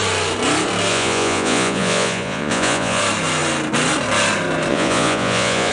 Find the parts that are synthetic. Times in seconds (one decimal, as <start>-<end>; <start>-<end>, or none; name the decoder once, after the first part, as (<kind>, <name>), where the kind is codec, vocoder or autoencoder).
0.9-3.0 (vocoder, Vocos); 4.7-5.7